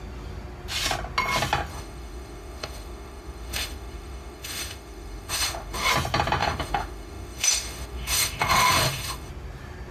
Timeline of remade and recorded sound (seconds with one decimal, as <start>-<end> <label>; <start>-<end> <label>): 0.0-1.7 recorded; 1.7-5.9 remade; 5.9-6.4 recorded; 6.4-9.3 remade; 9.3-9.9 recorded